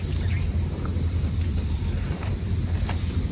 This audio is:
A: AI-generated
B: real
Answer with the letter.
B